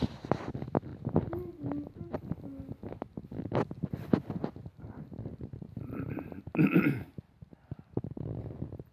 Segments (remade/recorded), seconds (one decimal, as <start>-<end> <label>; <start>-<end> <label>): 0.0-8.9 recorded